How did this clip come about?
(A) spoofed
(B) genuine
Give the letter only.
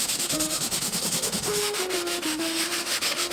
A